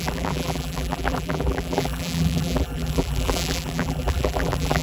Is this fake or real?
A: fake